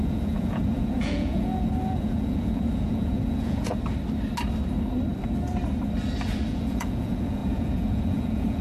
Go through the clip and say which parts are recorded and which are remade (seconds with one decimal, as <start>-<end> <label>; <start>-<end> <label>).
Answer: 0.0-3.7 remade; 3.7-6.5 recorded; 6.5-8.6 remade